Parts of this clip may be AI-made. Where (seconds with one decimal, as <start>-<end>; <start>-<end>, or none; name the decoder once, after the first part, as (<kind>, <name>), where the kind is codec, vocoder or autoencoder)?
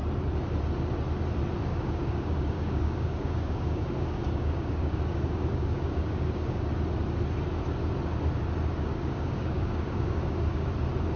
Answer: 1.7-6.7 (codec, DAC); 8.9-10.7